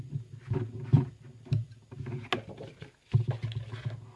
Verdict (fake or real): real